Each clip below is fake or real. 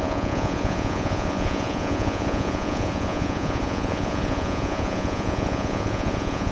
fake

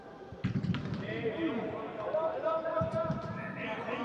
real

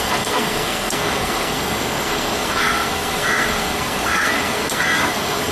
fake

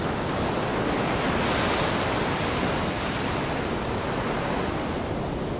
real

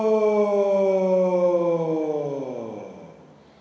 real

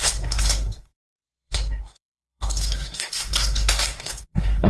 fake